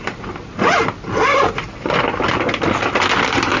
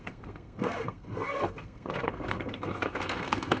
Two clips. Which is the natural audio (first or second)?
first